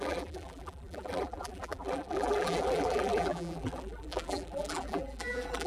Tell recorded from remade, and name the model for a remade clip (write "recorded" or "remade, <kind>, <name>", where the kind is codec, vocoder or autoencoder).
remade, vocoder, BigVGAN v2